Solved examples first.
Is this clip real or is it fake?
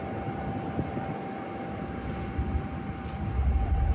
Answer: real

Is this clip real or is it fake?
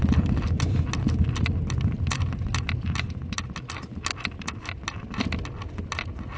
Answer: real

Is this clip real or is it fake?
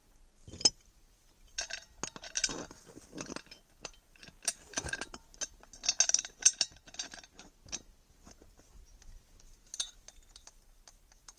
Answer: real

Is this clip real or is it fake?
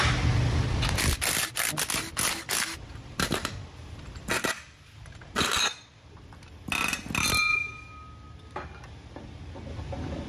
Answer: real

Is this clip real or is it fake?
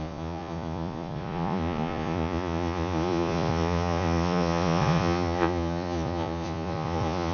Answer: fake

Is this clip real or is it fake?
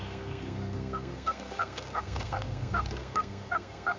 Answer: fake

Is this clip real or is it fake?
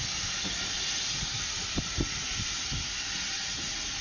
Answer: real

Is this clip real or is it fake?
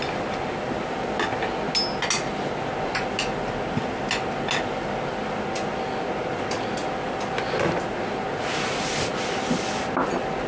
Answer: real